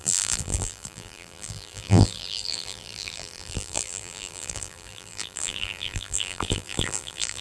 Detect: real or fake fake